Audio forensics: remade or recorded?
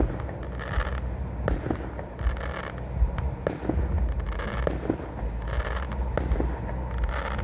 recorded